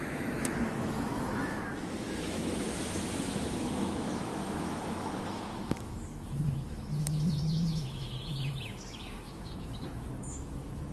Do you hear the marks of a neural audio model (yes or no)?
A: yes